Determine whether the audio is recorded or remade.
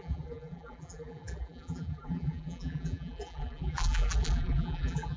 remade